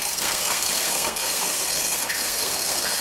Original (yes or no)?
no